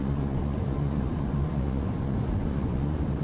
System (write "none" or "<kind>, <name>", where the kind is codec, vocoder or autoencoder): vocoder, Vocos